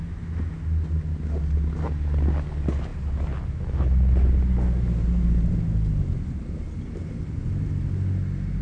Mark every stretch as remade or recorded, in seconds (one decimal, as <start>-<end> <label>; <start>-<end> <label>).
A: 0.0-8.6 recorded